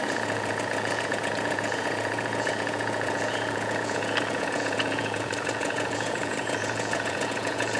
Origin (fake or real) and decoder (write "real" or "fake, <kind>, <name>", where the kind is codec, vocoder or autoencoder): fake, vocoder, Vocos